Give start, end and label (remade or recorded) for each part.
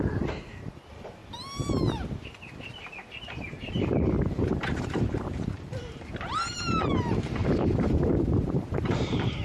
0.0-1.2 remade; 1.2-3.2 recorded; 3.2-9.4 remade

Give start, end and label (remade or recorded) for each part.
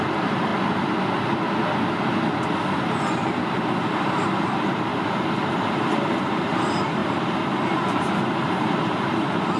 0.0-0.5 remade; 0.5-3.1 recorded; 3.1-4.9 remade; 4.9-5.7 recorded; 5.7-9.6 remade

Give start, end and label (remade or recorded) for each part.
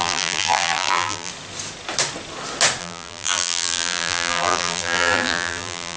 0.0-1.3 remade; 1.3-2.8 recorded; 2.8-6.0 remade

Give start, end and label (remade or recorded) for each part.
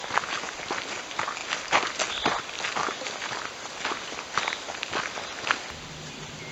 0.0-6.5 recorded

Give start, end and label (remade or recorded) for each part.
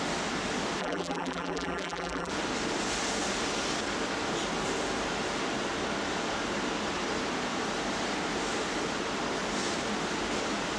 0.0-0.8 recorded; 0.8-2.3 remade; 2.3-10.8 recorded